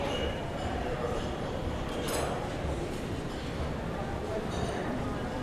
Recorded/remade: remade